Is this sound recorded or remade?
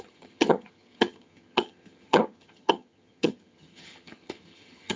remade